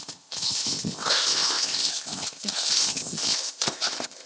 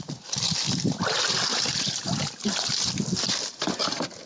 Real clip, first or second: second